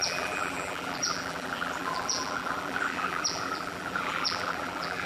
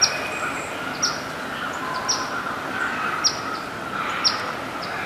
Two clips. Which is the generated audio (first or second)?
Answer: first